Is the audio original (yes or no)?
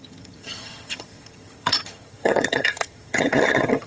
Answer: no